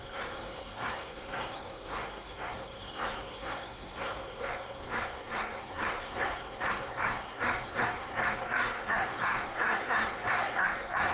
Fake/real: fake